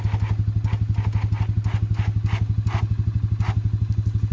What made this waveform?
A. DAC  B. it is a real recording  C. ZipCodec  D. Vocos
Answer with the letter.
B